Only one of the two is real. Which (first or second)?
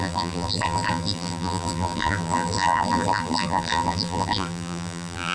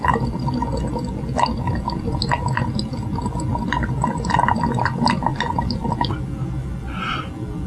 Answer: second